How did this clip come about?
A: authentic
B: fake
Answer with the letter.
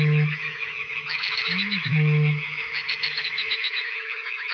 B